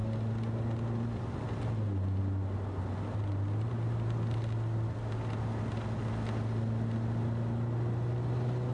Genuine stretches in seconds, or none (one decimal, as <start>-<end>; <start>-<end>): 0.0-8.7